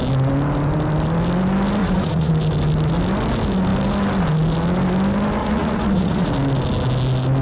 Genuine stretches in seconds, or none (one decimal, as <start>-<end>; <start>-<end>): 0.0-1.8; 2.3-5.4; 6.3-7.4